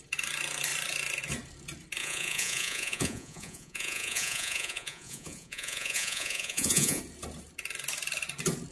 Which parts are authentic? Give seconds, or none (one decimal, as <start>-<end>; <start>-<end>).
0.0-2.0; 7.0-8.7